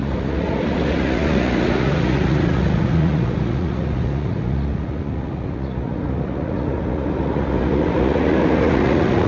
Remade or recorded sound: remade